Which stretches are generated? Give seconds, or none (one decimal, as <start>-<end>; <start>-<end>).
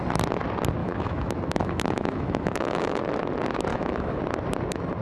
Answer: 0.8-3.0; 3.7-4.2